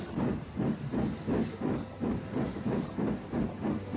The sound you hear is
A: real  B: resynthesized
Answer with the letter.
A